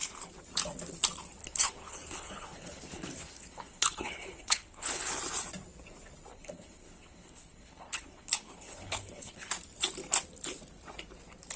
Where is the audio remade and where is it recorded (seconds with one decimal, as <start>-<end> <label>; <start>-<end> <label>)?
0.0-1.4 recorded; 1.4-5.0 remade; 5.0-6.3 recorded; 6.3-9.5 remade; 9.5-11.6 recorded